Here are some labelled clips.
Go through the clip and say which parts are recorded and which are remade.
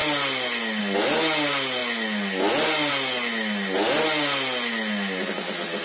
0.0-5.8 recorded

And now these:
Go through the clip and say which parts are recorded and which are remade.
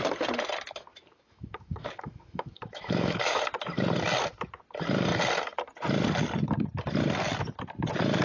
0.0-0.9 recorded; 0.9-3.4 remade; 3.4-8.2 recorded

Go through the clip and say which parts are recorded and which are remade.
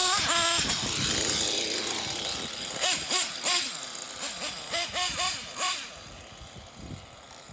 0.0-7.5 recorded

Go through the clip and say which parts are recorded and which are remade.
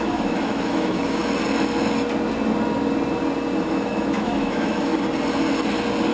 0.0-1.2 remade; 1.2-3.6 recorded; 3.6-4.9 remade; 4.9-6.1 recorded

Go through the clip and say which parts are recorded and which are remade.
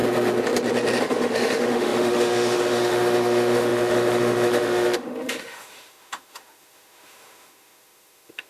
0.0-1.0 recorded; 1.0-8.5 remade